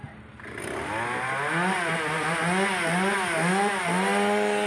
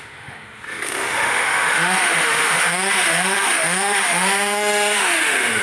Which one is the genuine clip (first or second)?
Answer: first